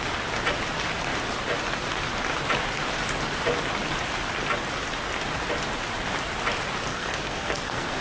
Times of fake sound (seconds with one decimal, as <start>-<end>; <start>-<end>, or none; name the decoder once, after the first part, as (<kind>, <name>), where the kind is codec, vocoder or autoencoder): 6.9-8.0 (codec, SNAC)